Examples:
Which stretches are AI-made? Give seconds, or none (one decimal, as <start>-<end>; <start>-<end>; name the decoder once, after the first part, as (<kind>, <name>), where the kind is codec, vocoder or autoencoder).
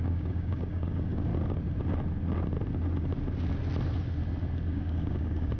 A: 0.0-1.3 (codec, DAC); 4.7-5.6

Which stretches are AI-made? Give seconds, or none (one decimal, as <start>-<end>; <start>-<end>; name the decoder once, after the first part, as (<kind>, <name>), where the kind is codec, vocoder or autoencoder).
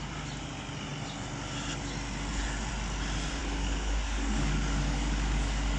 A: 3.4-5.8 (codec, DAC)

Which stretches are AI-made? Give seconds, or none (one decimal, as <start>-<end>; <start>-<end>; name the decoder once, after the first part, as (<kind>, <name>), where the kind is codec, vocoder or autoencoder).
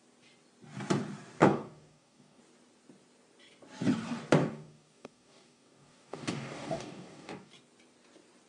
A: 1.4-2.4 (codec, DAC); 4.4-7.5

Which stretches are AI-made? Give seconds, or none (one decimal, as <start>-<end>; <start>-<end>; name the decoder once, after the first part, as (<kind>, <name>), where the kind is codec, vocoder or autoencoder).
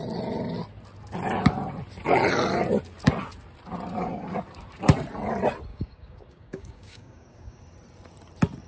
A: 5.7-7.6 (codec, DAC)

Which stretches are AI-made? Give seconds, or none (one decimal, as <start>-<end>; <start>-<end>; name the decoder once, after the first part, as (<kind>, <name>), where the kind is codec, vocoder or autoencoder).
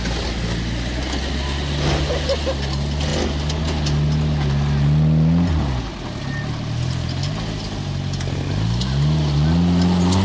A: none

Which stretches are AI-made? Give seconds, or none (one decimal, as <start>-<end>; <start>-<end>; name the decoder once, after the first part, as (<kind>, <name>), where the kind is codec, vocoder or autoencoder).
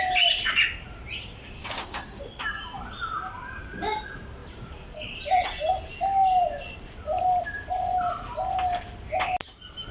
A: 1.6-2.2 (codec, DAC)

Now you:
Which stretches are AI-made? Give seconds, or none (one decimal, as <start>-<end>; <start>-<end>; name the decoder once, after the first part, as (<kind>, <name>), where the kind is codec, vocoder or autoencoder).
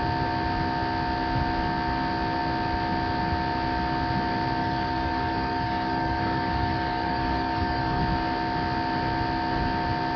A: 4.6-8.0 (codec, DAC)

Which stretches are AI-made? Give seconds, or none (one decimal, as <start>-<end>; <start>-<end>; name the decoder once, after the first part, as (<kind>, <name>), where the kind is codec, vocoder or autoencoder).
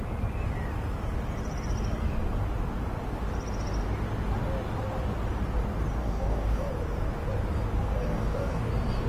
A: 6.0-6.7 (codec, DAC); 8.0-8.6